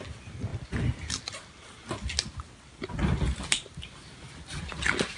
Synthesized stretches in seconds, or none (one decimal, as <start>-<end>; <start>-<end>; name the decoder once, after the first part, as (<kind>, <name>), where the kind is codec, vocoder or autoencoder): none